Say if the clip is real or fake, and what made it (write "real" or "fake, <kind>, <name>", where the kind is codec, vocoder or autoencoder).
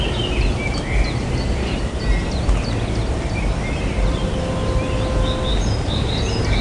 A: real